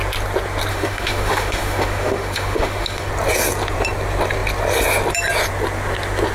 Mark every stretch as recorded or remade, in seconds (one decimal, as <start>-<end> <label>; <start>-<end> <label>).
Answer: 0.0-0.7 recorded; 0.7-3.1 remade; 3.1-6.3 recorded